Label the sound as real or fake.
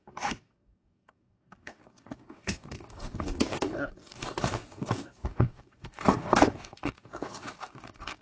fake